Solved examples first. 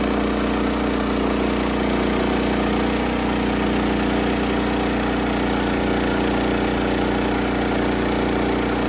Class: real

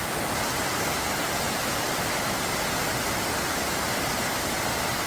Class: real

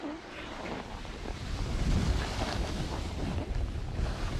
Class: real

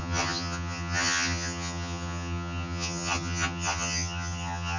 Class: fake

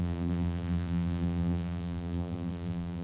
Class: fake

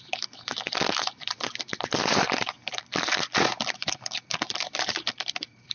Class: fake